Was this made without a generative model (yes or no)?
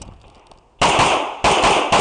yes